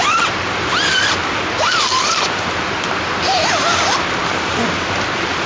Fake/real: fake